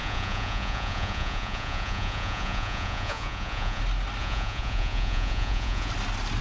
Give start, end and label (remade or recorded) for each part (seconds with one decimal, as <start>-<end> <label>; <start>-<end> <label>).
0.0-3.8 remade; 3.8-4.2 recorded; 4.2-5.9 remade; 5.9-6.4 recorded